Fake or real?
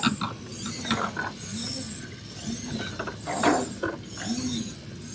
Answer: real